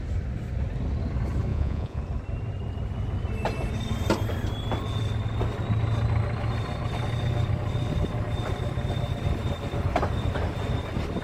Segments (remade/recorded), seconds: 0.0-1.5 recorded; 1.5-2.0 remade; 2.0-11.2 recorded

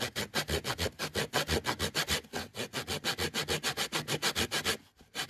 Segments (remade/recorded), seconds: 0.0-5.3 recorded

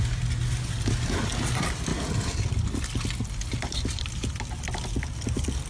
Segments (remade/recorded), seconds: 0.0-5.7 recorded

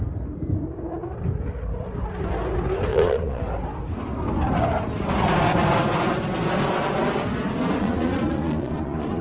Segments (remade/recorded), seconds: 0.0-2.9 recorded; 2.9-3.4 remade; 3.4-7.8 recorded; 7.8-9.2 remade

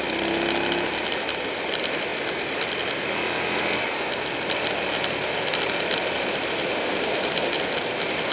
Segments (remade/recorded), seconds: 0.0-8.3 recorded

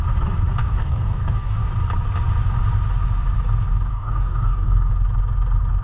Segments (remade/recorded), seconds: 0.0-0.6 recorded; 0.6-1.7 remade; 1.7-3.9 recorded; 3.9-4.9 remade; 4.9-5.8 recorded